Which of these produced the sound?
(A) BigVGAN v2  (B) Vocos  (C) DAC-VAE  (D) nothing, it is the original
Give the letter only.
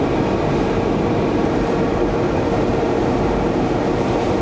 A